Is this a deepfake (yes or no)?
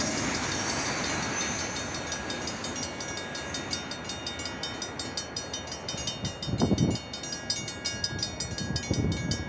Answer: no